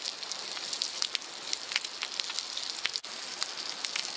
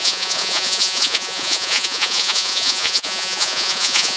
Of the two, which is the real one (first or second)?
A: first